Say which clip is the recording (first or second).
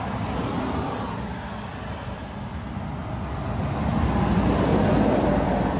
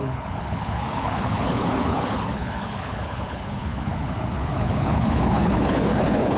first